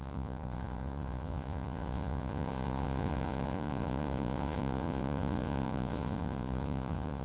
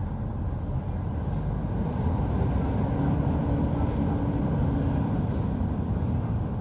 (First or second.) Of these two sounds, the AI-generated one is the first